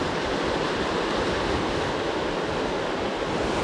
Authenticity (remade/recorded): recorded